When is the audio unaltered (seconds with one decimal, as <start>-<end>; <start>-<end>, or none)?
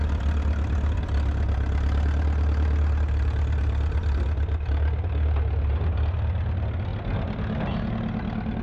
0.0-8.6